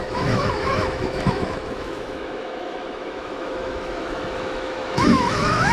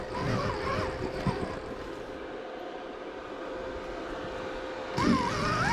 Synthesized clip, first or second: first